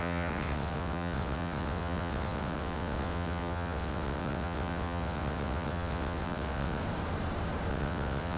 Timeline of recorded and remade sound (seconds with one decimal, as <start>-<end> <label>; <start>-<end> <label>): 0.0-6.8 remade; 6.8-7.7 recorded; 7.7-8.4 remade